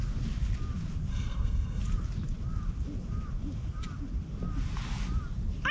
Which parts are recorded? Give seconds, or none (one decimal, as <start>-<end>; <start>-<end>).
0.0-1.1; 1.8-5.7